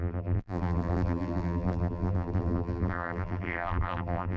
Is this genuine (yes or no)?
no